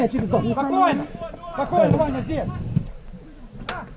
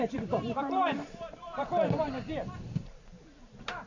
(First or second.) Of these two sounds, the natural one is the first